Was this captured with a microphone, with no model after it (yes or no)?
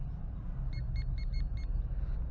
yes